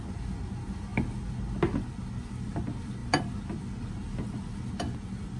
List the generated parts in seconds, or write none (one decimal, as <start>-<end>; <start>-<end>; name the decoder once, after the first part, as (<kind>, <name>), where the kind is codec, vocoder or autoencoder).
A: none

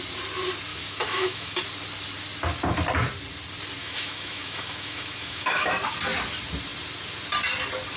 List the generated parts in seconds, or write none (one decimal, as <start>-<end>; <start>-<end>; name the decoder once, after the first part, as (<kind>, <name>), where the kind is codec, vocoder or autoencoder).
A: 0.7-1.6 (autoencoder, DAC-VAE); 3.8-5.7

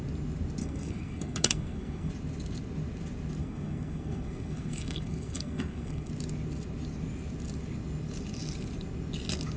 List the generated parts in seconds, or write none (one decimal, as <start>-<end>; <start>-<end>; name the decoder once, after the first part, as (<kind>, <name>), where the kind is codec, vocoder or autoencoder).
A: 0.6-2.1 (codec, SNAC); 3.4-6.1